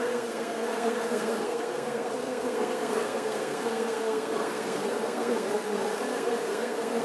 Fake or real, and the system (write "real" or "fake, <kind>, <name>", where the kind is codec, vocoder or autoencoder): fake, codec, SNAC